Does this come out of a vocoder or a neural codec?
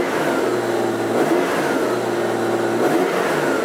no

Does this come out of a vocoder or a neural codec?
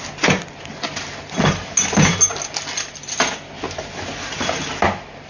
no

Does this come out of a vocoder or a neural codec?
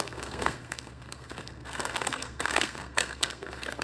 yes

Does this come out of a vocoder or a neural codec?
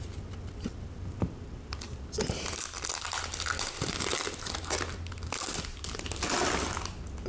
no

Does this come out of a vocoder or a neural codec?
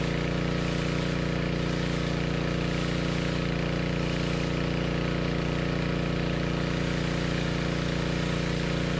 no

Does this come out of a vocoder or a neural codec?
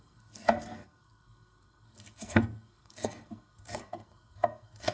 yes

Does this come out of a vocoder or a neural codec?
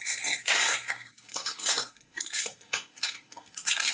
yes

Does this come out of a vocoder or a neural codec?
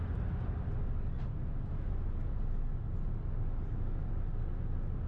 no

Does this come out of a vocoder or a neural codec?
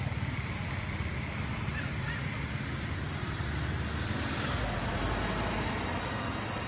no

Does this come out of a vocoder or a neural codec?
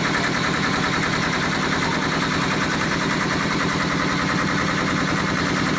no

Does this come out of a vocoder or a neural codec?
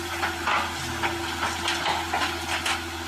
no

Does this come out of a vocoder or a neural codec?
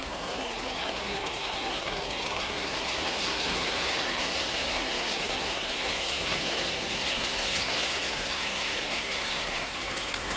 yes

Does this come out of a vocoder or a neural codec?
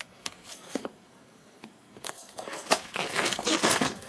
yes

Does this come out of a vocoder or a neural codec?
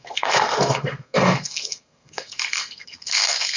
yes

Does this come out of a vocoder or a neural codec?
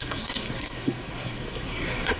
yes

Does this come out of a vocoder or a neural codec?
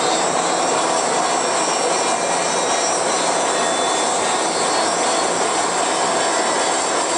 no